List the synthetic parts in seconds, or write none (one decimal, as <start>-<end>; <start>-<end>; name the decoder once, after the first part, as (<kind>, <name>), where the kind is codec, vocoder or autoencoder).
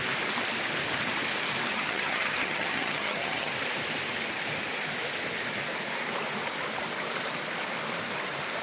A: 1.7-3.5 (vocoder, HiFi-GAN)